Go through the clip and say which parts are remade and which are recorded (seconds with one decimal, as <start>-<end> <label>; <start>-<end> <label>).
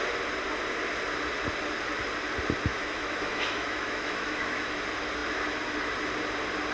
0.0-2.7 recorded; 2.7-4.8 remade; 4.8-6.7 recorded